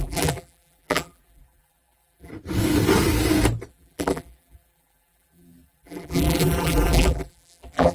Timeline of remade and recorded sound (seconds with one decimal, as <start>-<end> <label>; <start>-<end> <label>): 0.0-2.3 remade; 2.3-3.7 recorded; 3.7-7.9 remade